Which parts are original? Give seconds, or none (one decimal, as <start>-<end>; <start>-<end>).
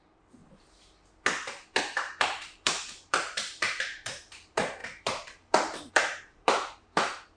0.4-1.8